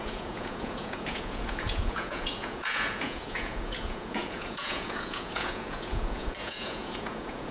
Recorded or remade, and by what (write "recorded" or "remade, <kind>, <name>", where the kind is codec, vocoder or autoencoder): remade, vocoder, Vocos